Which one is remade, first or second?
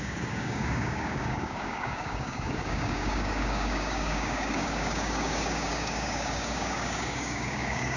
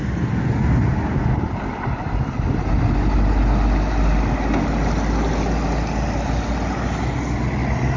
first